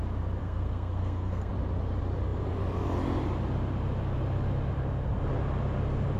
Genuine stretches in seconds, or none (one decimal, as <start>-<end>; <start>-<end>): 0.0-0.4; 1.5-6.2